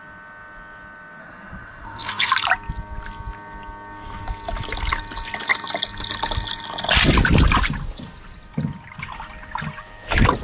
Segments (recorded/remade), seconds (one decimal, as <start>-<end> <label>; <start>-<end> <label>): 0.0-1.2 recorded; 1.2-2.3 remade; 2.3-10.4 recorded